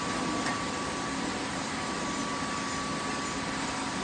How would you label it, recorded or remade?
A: recorded